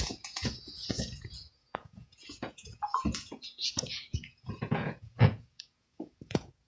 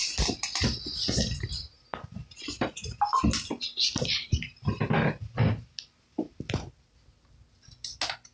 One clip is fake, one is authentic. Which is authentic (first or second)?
second